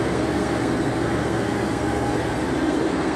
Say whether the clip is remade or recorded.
remade